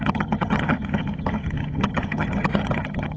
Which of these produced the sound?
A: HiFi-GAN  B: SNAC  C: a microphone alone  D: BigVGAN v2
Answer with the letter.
A